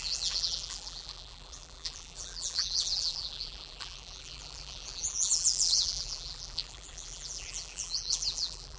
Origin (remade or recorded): remade